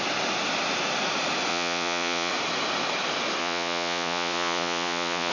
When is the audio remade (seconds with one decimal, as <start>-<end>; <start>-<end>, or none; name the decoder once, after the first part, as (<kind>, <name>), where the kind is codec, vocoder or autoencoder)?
1.5-2.3 (vocoder, Vocos); 3.4-5.3

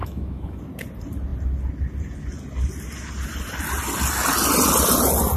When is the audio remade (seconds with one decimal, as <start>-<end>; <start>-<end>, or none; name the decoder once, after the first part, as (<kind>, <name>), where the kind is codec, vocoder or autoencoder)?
0.0-0.6 (autoencoder, DAC-VAE)

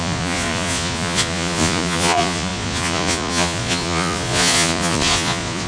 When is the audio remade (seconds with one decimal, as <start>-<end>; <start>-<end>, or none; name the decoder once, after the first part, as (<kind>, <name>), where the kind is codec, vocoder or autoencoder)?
0.0-5.7 (vocoder, Vocos)

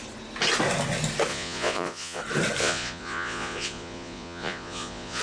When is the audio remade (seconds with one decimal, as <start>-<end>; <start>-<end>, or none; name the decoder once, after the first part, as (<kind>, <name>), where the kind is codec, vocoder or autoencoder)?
1.3-2.2 (vocoder, Vocos); 2.6-5.2

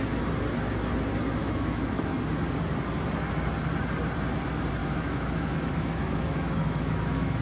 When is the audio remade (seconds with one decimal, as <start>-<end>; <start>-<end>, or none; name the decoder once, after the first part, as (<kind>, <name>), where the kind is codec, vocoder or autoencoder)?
1.4-2.2 (autoencoder, DAC-VAE); 4.8-7.4

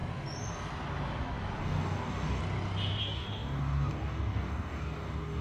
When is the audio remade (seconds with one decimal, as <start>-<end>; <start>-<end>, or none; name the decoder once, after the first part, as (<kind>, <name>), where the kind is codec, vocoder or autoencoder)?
1.6-2.4 (codec, DAC); 3.0-5.4

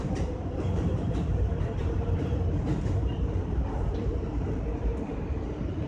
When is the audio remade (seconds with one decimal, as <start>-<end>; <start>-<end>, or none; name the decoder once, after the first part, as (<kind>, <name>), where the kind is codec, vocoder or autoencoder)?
0.0-5.9 (vocoder, BigVGAN v2)